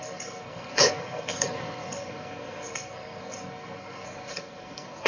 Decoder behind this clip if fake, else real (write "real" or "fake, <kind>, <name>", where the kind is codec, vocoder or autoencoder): fake, codec, SNAC